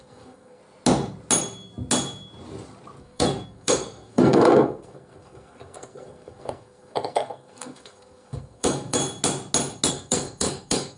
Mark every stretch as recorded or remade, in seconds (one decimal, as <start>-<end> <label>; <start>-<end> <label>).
0.0-0.6 remade; 0.6-3.0 recorded; 3.0-9.0 remade; 9.0-9.9 recorded; 9.9-11.0 remade